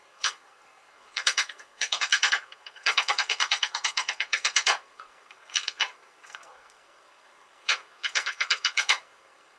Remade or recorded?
remade